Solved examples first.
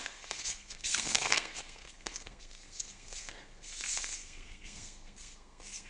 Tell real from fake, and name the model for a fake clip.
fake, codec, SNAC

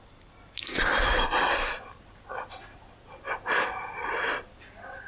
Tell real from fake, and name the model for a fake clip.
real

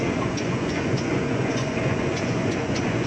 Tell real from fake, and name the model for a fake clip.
fake, vocoder, Vocos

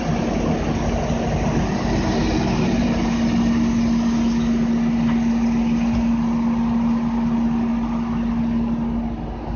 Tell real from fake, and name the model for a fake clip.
real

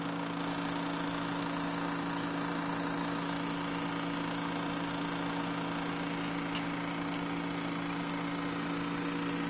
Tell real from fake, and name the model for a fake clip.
real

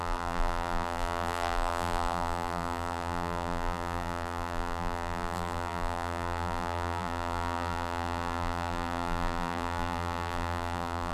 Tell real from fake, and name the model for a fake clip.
fake, vocoder, BigVGAN v2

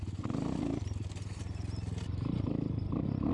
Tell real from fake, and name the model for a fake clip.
real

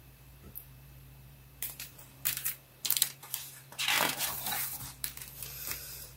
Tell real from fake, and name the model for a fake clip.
fake, vocoder, BigVGAN v2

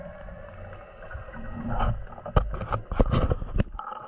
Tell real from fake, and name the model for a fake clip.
real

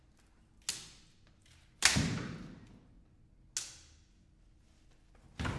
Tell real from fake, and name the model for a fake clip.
real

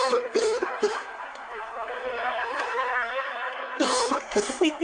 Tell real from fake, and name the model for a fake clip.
fake, codec, SNAC